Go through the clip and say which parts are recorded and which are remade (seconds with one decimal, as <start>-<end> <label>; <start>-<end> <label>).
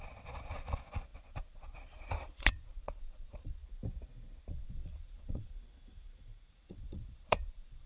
0.0-3.6 remade; 3.6-4.5 recorded; 4.5-5.5 remade; 5.5-6.5 recorded; 6.5-7.9 remade